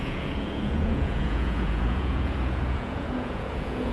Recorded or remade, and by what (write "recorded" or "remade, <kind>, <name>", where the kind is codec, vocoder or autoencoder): remade, vocoder, Vocos